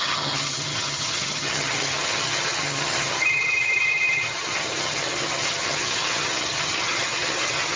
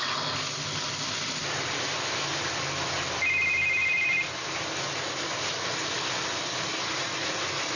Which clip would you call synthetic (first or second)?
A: first